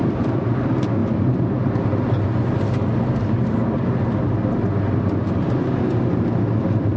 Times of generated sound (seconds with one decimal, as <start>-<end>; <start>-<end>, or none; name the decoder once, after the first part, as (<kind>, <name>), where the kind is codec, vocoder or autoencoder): none